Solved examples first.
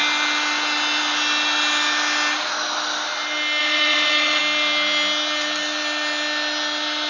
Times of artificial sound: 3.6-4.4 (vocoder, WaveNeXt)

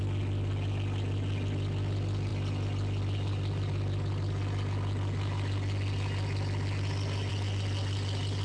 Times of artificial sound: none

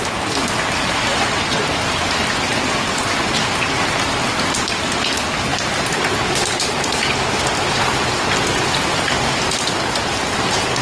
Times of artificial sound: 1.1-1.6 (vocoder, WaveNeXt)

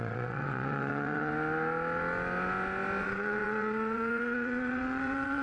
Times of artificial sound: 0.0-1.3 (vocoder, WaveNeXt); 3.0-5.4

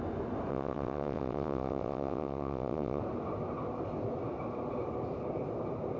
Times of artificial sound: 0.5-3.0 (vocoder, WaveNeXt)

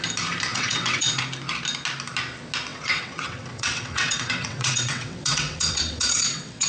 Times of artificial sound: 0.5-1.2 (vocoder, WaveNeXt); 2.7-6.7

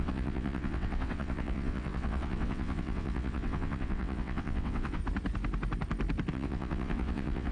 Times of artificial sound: 0.0-5.0 (vocoder, WaveNeXt); 6.3-7.5

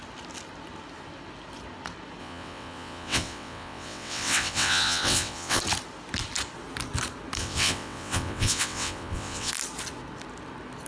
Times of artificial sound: 2.2-5.6 (vocoder, WaveNeXt); 7.4-9.5